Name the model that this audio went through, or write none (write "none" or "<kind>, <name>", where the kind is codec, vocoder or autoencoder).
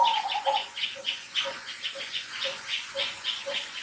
vocoder, Vocos